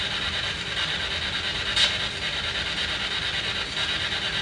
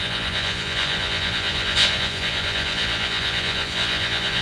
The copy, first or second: second